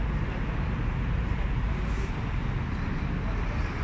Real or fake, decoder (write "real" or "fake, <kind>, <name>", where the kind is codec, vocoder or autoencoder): real